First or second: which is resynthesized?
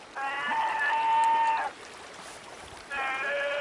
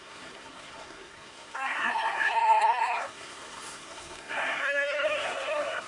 second